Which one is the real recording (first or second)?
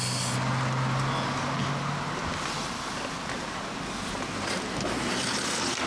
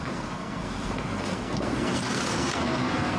first